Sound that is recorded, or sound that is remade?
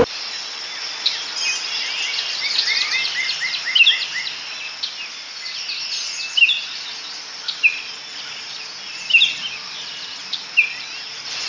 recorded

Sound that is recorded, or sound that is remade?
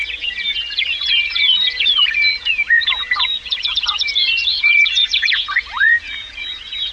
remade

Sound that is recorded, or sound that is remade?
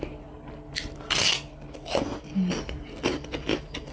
recorded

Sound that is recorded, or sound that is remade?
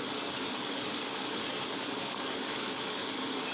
remade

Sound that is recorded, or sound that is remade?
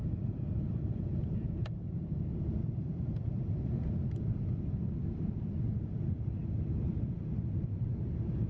remade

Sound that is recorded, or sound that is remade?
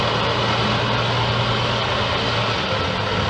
recorded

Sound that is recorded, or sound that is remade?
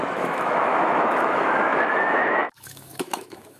remade